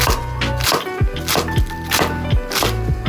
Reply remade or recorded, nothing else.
recorded